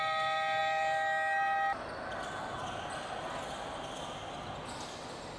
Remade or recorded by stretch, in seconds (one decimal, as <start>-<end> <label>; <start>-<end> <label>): 0.0-5.4 recorded